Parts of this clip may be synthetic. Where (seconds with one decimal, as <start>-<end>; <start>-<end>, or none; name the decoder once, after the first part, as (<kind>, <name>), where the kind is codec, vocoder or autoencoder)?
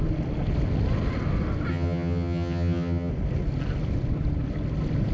1.7-3.1 (vocoder, HiFi-GAN)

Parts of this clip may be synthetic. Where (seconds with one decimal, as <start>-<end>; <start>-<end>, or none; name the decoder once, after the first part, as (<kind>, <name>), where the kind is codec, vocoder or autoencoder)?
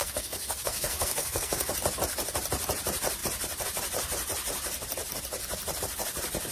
0.0-1.7 (codec, SNAC)